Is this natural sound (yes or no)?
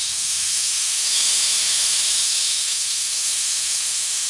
no